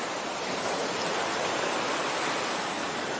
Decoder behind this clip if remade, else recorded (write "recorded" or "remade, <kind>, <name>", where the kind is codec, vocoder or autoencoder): recorded